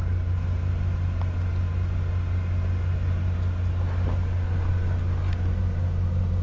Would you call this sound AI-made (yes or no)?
no